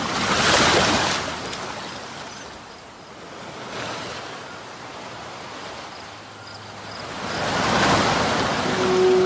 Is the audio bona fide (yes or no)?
yes